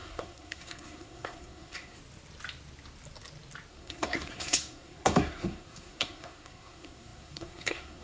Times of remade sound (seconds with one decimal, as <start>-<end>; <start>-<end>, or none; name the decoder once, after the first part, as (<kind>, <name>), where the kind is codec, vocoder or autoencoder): 0.0-2.0 (codec, SNAC); 3.7-8.0